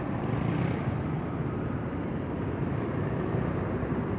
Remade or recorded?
recorded